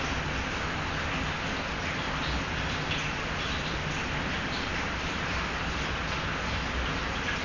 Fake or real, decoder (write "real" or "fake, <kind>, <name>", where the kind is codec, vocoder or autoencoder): real